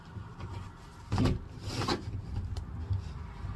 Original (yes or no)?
yes